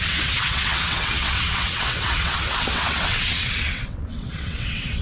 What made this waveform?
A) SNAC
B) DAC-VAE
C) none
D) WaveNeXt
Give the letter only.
D